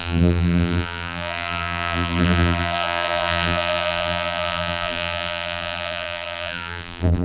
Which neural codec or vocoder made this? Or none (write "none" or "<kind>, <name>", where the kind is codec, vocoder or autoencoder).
vocoder, BigVGAN v2